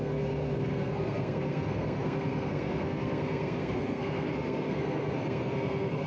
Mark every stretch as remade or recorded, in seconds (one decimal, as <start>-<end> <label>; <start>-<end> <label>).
0.0-6.1 remade